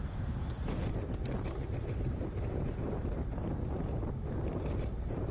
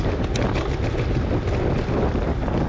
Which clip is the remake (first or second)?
first